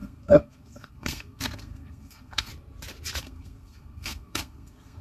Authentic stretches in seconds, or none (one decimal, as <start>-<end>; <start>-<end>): 2.5-3.2